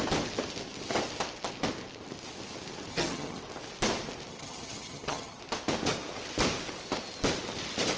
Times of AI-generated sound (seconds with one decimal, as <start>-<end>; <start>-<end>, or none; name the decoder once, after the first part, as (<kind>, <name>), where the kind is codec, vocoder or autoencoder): 2.9-3.4 (vocoder, HiFi-GAN); 4.3-5.4